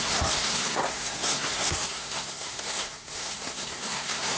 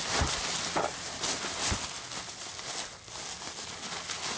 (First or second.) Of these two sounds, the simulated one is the first